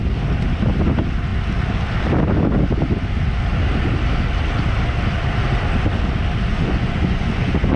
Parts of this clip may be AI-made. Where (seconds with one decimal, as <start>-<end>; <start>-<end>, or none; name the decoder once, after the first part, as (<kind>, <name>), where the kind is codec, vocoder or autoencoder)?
6.5-7.8 (vocoder, Vocos)